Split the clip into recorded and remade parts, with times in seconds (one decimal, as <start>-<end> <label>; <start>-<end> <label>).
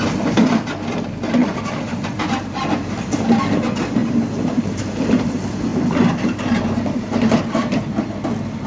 0.0-1.4 recorded; 1.4-3.1 remade; 3.1-4.0 recorded; 4.0-5.2 remade; 5.2-5.7 recorded; 5.7-7.4 remade; 7.4-8.7 recorded